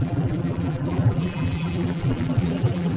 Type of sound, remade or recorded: remade